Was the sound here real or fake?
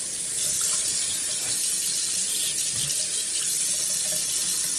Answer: real